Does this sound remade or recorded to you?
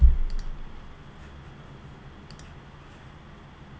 recorded